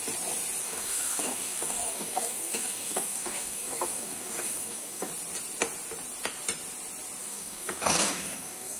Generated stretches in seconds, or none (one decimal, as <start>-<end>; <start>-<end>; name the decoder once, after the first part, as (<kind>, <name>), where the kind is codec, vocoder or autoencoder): 0.6-5.1 (codec, DAC); 7.2-8.8

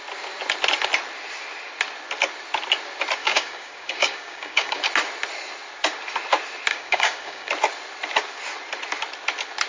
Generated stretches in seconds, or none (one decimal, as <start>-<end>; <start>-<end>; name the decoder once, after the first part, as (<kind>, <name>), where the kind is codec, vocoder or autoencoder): 3.2-4.8 (codec, DAC); 6.7-7.5

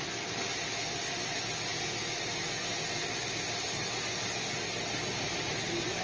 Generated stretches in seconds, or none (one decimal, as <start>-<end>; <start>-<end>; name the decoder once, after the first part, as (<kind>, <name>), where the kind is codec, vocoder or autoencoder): none